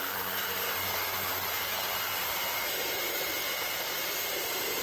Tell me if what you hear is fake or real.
fake